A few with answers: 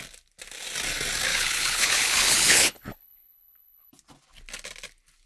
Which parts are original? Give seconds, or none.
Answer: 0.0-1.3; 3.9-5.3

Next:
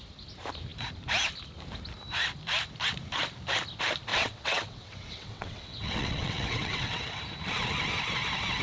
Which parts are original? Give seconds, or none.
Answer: 0.0-4.1; 7.2-8.6

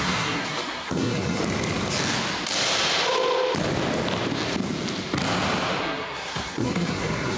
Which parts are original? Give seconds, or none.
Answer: 1.4-5.8

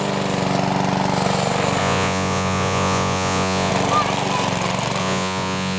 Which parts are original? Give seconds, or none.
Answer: 0.0-1.8; 3.7-5.0

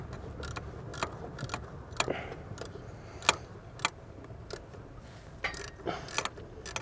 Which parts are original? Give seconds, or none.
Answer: 0.0-6.8

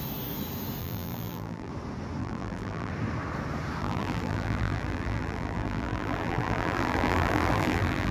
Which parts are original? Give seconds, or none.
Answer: 0.0-0.8; 1.7-2.2; 2.9-3.8